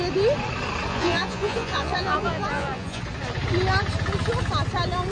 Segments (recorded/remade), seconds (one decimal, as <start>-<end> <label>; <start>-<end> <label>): 0.0-0.9 recorded; 0.9-3.0 remade; 3.0-5.1 recorded